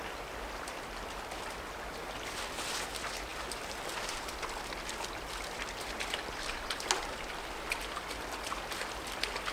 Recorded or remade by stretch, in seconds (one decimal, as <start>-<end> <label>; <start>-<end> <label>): 0.0-9.5 recorded